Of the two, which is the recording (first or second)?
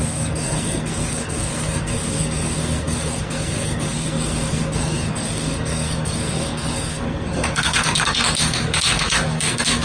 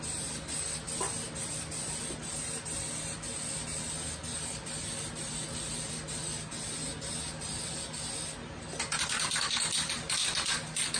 second